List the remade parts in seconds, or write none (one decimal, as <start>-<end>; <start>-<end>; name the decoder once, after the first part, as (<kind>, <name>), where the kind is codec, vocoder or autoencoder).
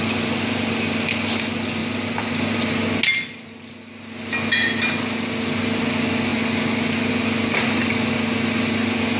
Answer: 1.8-2.6 (vocoder, BigVGAN v2)